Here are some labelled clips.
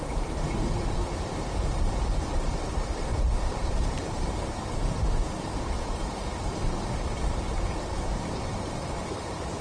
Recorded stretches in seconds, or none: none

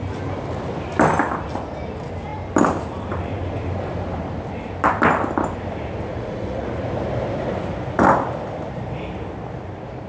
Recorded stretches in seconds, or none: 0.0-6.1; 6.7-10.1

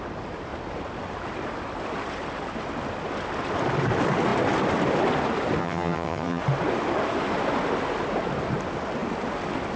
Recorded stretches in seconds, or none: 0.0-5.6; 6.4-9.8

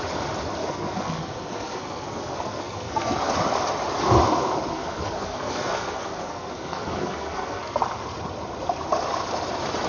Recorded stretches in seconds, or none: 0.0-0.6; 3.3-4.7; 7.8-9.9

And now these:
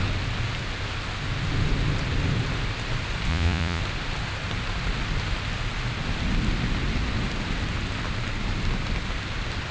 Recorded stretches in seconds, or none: 0.0-3.3; 3.8-9.7

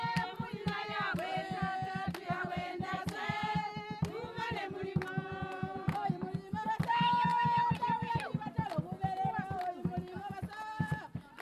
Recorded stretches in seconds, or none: 0.0-11.4

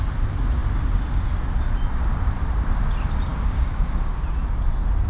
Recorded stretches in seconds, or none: 0.0-3.3; 4.2-5.1